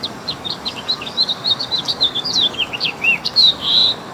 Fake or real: fake